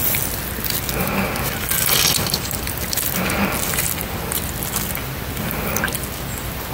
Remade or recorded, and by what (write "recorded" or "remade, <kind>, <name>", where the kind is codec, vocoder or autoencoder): recorded